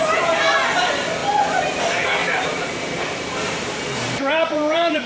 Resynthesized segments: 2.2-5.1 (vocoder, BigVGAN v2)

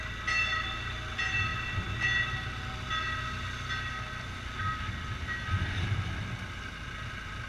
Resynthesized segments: none

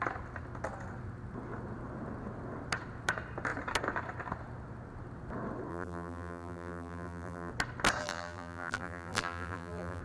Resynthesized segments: 5.7-7.5 (vocoder, BigVGAN v2); 8.0-10.0